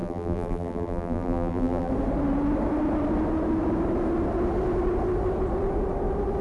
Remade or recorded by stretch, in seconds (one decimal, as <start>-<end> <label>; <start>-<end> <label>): 0.0-1.9 remade; 1.9-6.4 recorded